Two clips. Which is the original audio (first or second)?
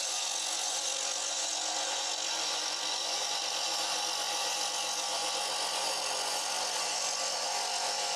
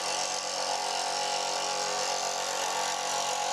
second